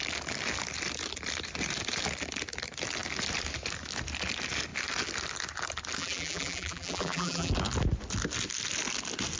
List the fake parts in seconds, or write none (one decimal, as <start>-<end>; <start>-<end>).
6.0-7.5